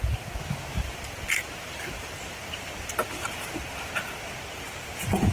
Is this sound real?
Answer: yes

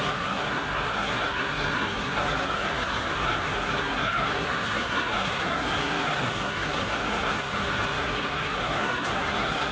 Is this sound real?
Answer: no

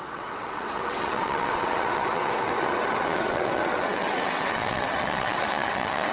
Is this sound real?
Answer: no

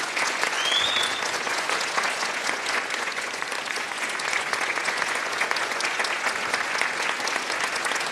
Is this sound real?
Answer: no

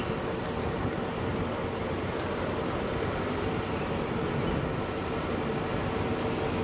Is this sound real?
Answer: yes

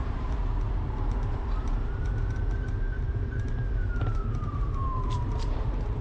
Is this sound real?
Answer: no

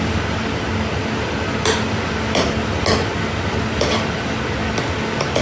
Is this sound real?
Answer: yes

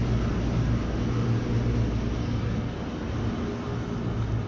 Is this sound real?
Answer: yes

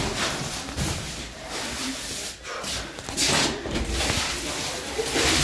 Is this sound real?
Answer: no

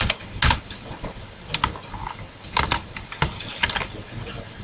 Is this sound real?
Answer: yes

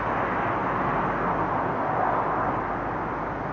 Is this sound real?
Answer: yes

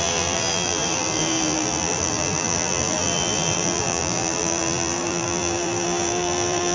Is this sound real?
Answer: no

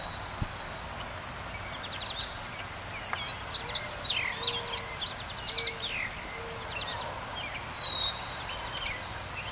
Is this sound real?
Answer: yes